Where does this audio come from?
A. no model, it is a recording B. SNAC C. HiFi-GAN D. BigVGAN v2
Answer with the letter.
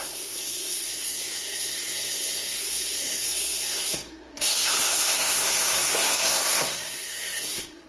B